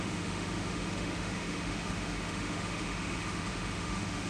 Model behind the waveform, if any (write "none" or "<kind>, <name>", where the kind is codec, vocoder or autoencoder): autoencoder, DAC-VAE